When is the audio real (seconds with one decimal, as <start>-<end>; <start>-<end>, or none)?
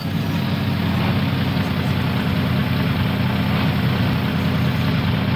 0.0-5.4